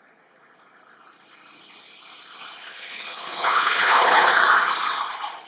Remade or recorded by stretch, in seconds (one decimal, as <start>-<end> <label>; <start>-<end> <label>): 0.0-2.7 recorded; 2.7-4.3 remade; 4.3-5.5 recorded